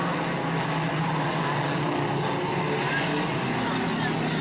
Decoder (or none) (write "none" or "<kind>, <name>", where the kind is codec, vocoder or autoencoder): none